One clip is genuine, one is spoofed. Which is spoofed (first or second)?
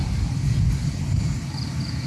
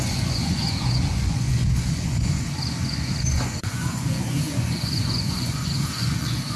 second